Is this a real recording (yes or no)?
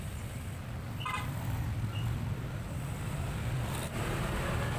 yes